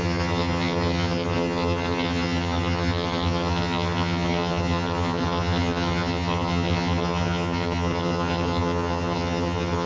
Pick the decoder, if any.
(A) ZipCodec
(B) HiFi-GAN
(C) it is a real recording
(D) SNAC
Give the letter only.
B